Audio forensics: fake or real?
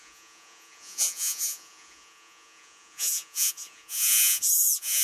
fake